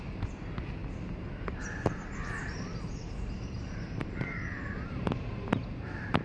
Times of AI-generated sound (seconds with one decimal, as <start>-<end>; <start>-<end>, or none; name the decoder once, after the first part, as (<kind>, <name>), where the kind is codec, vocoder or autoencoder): 2.4-6.2 (vocoder, BigVGAN v2)